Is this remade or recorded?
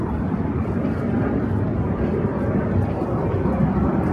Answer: remade